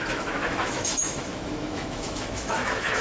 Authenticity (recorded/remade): remade